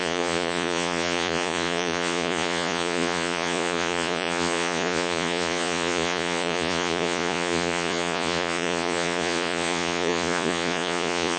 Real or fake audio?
fake